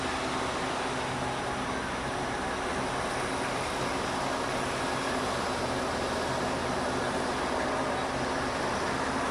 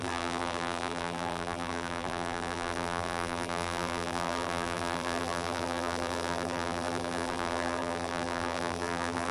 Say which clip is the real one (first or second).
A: first